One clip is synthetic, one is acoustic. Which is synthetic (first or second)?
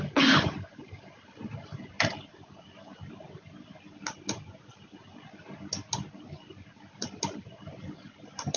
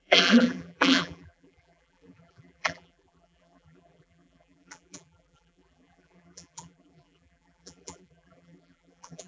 second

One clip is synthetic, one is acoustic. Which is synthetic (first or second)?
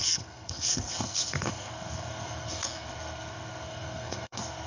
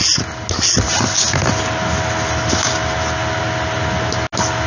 first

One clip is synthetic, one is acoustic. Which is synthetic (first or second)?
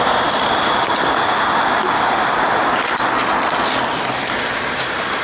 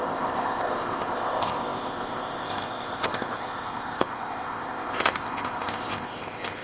second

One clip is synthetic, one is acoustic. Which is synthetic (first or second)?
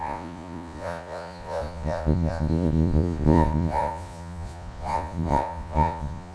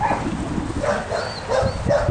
first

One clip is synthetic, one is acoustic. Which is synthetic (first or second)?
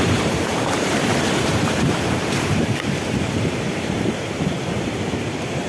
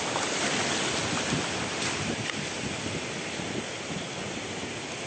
first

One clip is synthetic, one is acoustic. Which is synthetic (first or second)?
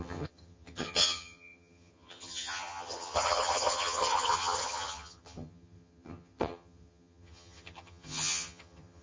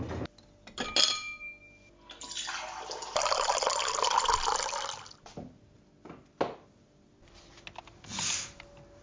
first